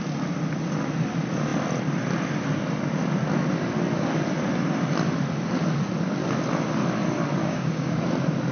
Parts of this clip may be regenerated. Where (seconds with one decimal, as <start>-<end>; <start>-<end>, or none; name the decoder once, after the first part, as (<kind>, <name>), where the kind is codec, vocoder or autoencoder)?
7.4-8.0 (codec, DAC)